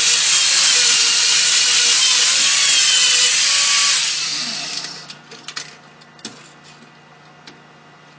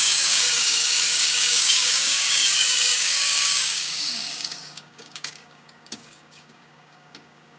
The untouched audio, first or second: first